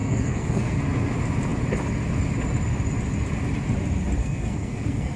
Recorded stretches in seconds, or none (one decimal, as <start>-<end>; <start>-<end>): 0.8-4.2